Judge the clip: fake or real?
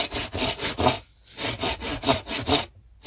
real